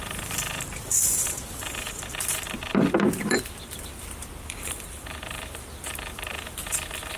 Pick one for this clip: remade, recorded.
remade